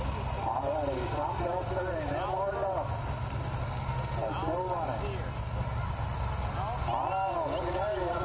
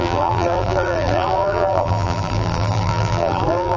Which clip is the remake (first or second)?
second